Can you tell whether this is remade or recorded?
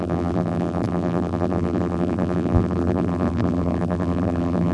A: remade